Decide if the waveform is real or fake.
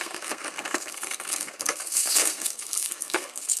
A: fake